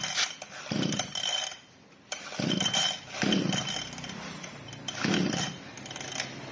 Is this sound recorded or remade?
remade